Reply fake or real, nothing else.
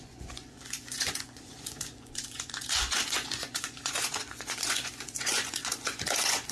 fake